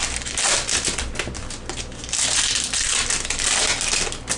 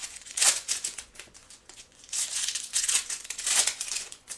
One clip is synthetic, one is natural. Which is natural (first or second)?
first